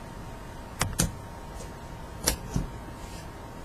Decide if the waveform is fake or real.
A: real